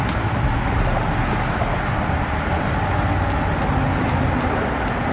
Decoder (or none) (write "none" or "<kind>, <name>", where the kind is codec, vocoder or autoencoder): none